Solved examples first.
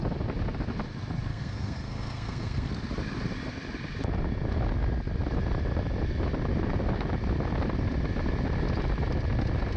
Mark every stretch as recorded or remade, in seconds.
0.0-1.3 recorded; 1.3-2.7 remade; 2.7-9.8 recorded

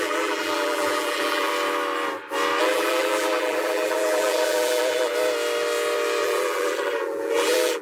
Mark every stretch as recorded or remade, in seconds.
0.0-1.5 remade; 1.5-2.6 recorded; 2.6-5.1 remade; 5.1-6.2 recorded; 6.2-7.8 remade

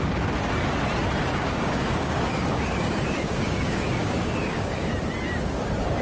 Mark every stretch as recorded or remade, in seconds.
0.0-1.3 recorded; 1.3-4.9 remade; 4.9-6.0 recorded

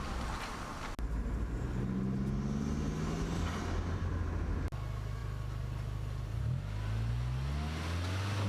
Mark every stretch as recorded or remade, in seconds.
0.0-8.5 recorded